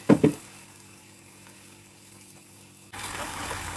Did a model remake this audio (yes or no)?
yes